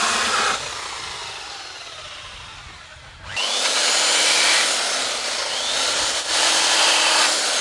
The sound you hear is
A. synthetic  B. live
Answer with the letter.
B